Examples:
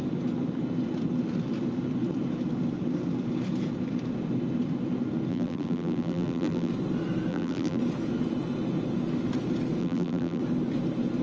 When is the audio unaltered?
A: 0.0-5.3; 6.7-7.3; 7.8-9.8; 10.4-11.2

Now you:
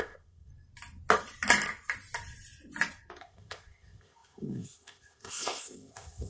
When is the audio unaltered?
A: 0.5-3.2

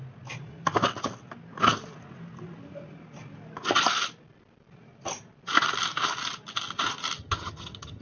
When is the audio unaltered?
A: 0.0-7.2

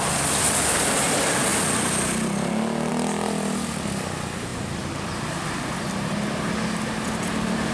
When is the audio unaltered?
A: 0.0-7.7

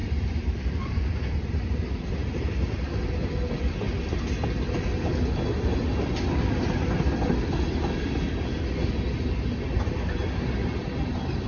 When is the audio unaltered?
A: 2.4-11.5

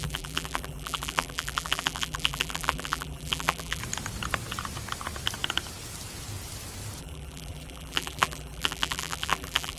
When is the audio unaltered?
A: 3.8-7.0